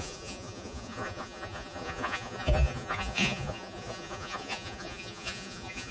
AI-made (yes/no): yes